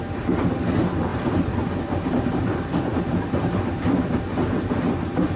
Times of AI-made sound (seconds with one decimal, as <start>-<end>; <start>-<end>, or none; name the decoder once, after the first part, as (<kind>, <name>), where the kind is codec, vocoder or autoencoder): 1.1-4.3 (vocoder, BigVGAN v2)